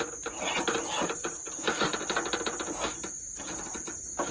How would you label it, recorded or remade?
recorded